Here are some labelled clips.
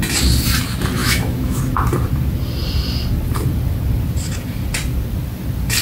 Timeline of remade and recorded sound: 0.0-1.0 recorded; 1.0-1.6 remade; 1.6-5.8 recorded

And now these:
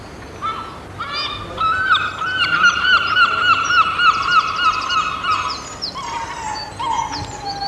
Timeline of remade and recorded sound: 0.0-7.7 recorded

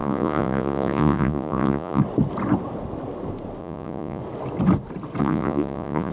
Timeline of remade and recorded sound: 0.0-2.0 remade; 2.0-3.6 recorded; 3.6-4.2 remade; 4.2-5.2 recorded; 5.2-6.1 remade